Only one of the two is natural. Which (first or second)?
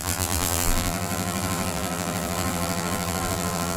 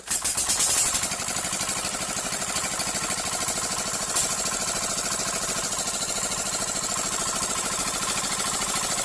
second